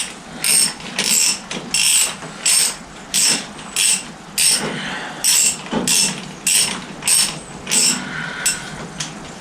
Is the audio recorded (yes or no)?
yes